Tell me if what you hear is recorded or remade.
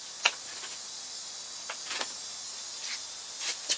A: recorded